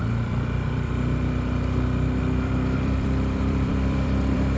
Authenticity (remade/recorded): remade